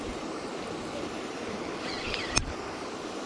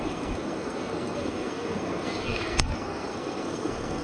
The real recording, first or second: first